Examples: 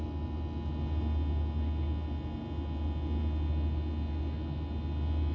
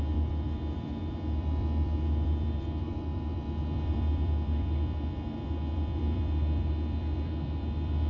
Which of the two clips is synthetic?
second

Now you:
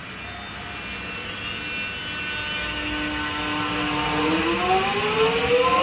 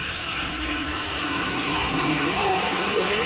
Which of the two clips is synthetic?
second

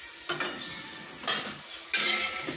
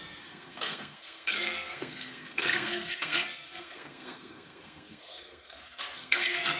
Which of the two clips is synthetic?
second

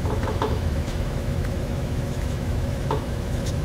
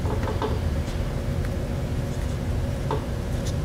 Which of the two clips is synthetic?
first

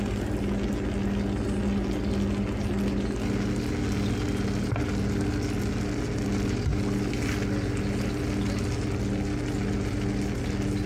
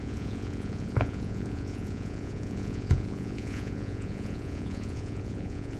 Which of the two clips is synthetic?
second